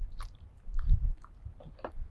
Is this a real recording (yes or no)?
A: no